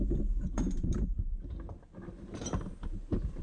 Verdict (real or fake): fake